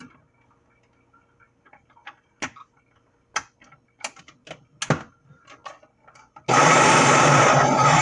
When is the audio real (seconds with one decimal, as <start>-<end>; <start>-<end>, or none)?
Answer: 0.0-8.0